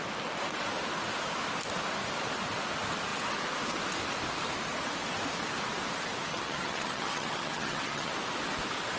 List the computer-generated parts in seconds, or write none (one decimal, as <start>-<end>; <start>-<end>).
6.3-8.1